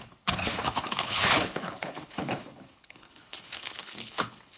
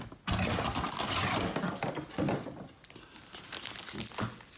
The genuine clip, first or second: second